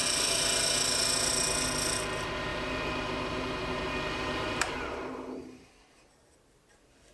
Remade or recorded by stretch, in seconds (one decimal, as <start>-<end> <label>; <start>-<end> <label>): 0.0-2.5 recorded; 2.5-5.7 remade; 5.7-7.1 recorded